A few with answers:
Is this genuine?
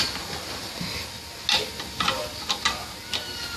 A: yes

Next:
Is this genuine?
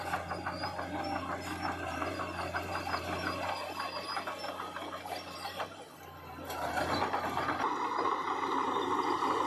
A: yes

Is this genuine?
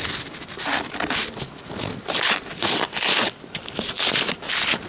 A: yes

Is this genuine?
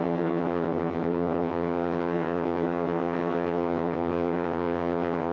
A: no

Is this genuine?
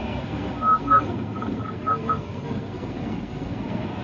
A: no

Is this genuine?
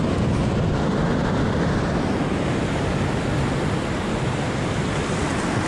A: yes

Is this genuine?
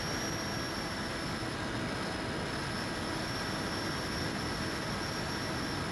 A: yes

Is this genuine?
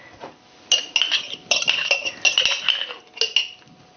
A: yes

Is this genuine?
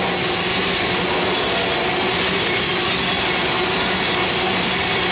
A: yes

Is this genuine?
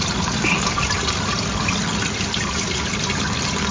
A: yes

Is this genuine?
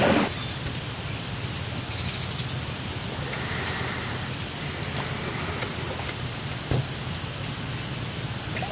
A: yes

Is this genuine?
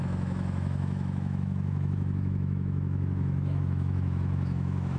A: no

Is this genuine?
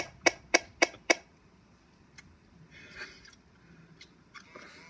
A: yes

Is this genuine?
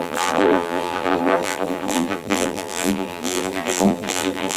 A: no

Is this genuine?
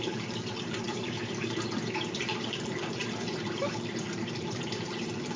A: no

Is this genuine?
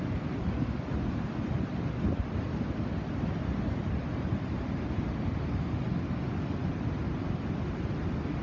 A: yes